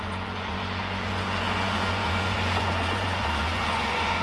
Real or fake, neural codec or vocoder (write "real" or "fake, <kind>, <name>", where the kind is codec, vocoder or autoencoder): fake, vocoder, Vocos